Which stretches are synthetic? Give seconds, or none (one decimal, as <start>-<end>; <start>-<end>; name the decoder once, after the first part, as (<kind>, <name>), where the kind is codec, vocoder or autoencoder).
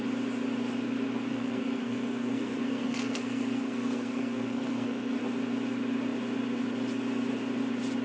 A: 1.3-5.2 (codec, SNAC)